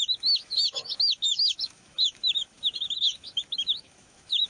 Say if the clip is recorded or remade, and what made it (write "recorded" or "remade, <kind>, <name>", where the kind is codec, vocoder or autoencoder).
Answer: remade, autoencoder, DAC-VAE